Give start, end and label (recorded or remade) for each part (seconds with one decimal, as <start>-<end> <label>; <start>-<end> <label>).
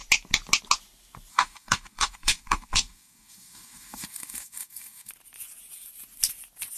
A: 0.0-1.3 recorded; 1.3-5.1 remade; 5.1-6.8 recorded